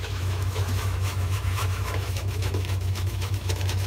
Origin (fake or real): fake